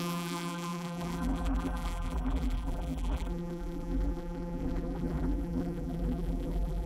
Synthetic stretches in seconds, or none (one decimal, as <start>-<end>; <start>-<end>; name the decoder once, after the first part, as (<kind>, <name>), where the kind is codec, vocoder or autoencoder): 0.0-6.9 (vocoder, BigVGAN v2)